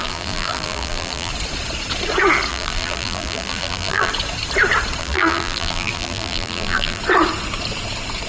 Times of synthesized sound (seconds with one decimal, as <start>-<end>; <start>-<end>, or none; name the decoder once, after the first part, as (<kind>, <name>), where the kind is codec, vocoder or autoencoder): 0.0-1.3 (vocoder, BigVGAN v2); 2.5-4.1; 5.0-7.0